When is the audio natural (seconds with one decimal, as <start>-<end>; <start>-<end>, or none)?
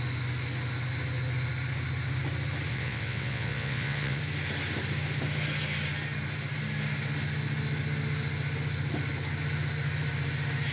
0.0-2.7; 4.2-10.7